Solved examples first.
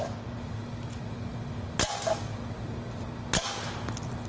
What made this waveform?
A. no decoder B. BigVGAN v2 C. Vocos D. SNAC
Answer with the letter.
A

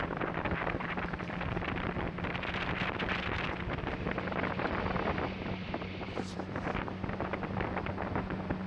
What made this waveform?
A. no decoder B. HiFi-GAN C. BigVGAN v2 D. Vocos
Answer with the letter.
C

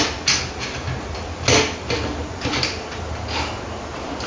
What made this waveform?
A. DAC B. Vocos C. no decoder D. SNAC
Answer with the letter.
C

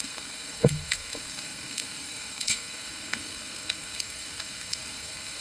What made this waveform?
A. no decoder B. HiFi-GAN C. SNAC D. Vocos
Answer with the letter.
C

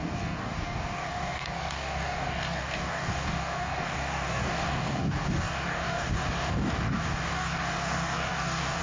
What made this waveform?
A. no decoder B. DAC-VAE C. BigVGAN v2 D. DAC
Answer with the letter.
D